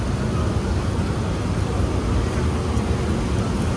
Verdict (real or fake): real